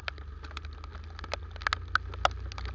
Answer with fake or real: real